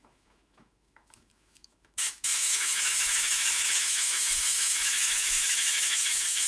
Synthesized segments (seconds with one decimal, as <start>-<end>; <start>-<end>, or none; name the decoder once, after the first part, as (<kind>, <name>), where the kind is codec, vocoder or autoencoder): 0.0-6.5 (autoencoder, DAC-VAE)